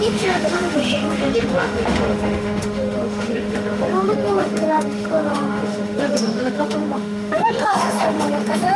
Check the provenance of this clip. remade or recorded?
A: remade